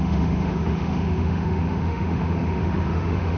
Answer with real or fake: fake